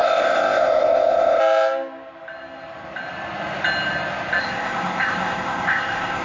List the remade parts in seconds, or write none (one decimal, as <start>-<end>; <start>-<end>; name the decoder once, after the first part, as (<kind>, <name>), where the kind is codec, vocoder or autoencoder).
0.0-1.4 (codec, ZipCodec); 4.4-6.2